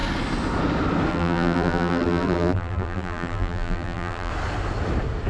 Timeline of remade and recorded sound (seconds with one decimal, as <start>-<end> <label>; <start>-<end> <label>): 0.0-1.1 recorded; 1.1-4.3 remade; 4.3-5.3 recorded